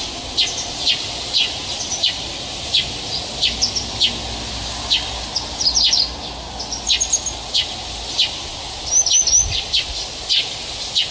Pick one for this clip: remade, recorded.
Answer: recorded